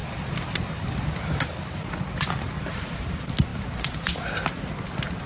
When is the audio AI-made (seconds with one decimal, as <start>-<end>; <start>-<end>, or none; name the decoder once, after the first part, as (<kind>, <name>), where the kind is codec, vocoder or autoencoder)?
0.0-1.4 (vocoder, BigVGAN v2); 3.5-5.3